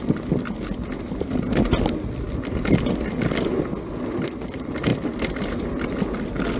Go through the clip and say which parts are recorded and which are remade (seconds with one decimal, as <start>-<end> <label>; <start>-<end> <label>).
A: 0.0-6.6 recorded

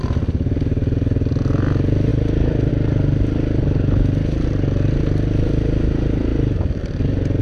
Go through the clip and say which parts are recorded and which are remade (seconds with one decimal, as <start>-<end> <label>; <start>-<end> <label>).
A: 0.0-2.1 recorded; 2.1-2.7 remade; 2.7-7.4 recorded

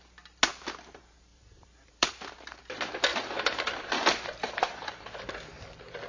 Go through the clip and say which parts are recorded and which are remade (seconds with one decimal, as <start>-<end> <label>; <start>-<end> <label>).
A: 0.0-0.5 recorded; 0.5-2.6 remade; 2.6-3.1 recorded; 3.1-5.3 remade; 5.3-6.1 recorded

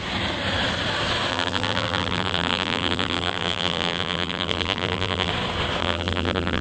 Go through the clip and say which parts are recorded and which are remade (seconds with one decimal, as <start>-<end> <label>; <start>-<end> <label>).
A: 0.0-1.3 recorded; 1.3-5.3 remade; 5.3-5.8 recorded; 5.8-6.6 remade

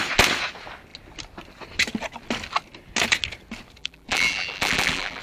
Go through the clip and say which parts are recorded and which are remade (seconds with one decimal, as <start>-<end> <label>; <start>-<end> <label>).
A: 0.0-3.8 recorded; 3.8-5.2 remade